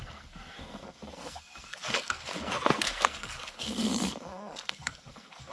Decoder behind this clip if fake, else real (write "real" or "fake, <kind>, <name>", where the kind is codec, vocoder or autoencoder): fake, codec, SNAC